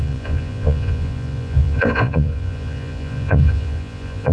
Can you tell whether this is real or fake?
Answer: fake